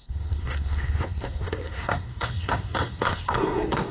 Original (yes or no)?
no